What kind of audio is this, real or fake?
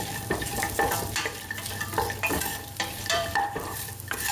fake